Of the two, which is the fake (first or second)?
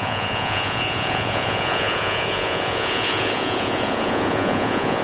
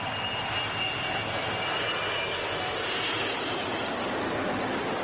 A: first